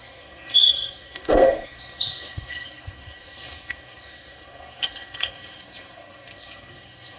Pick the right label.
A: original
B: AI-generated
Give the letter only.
B